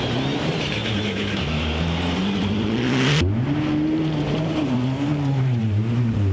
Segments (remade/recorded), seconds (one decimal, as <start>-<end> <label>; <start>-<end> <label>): 0.0-0.8 remade; 0.8-4.3 recorded; 4.3-6.3 remade